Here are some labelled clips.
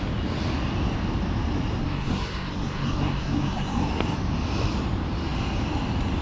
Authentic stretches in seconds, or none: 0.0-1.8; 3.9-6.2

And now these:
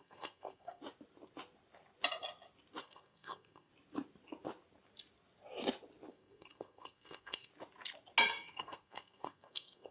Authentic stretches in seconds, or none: 0.8-2.8; 3.7-6.1; 7.5-8.2

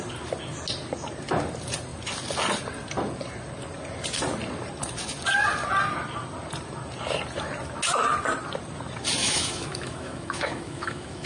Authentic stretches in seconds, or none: 0.0-9.2

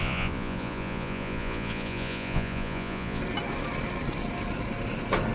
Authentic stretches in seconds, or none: 3.2-5.3

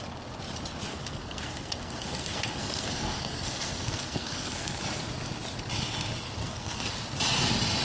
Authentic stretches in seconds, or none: 0.0-0.9; 4.8-6.4; 6.9-7.8

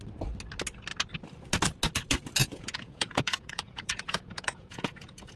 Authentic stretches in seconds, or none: 0.0-2.4

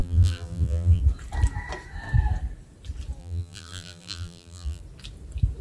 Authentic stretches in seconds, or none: 1.0-3.2; 4.8-5.6

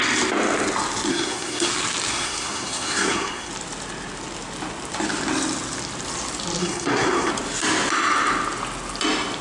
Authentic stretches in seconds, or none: 0.0-1.1; 1.7-2.1; 3.5-6.6; 7.3-9.4